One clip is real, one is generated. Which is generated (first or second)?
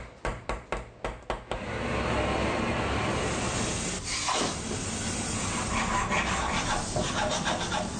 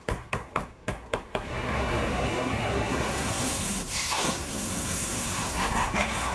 second